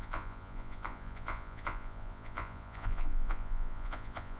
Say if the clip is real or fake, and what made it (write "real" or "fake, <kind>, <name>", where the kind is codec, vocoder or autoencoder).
fake, vocoder, Vocos